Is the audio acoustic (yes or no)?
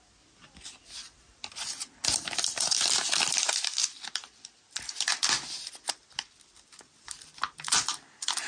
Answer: yes